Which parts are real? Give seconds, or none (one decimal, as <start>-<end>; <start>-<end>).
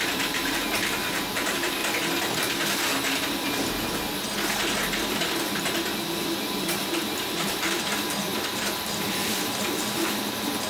1.8-2.4; 2.9-6.2